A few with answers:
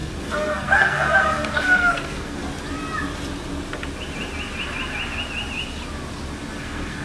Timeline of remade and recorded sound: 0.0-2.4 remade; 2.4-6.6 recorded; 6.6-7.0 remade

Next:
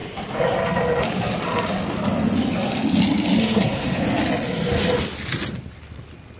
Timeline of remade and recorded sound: 0.0-3.4 recorded; 3.4-4.0 remade; 4.0-6.4 recorded

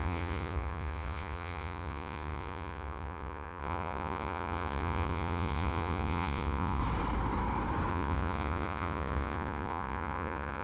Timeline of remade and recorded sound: 0.0-6.8 remade; 6.8-7.9 recorded; 7.9-10.6 remade

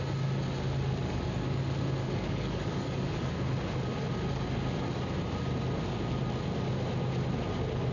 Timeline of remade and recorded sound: 0.0-1.0 recorded; 1.0-1.6 remade; 1.6-2.0 recorded; 2.0-3.3 remade; 3.3-7.9 recorded